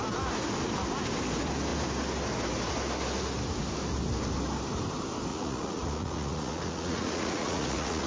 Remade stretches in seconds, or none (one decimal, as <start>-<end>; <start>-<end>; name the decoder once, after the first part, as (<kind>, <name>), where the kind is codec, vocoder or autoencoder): 5.3-8.1 (vocoder, Vocos)